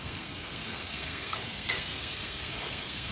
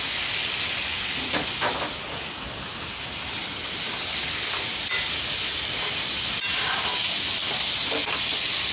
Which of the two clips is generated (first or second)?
first